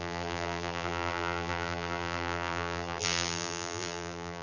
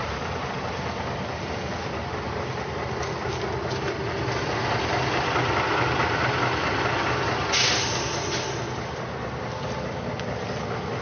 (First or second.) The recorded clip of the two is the second